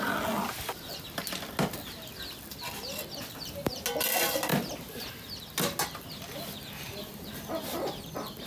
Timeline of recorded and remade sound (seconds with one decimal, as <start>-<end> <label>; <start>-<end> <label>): 0.0-8.5 recorded

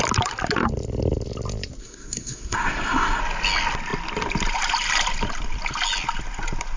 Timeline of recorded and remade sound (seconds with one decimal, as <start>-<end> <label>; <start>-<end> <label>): 0.0-1.8 recorded; 1.8-3.2 remade; 3.2-6.8 recorded

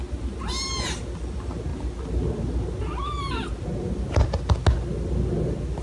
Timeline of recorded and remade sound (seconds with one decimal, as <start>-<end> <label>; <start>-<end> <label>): 0.0-5.8 recorded